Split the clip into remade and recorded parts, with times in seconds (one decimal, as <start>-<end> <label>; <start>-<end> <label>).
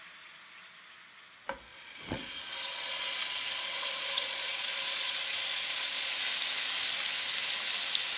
0.0-1.7 recorded; 1.7-6.1 remade; 6.1-8.2 recorded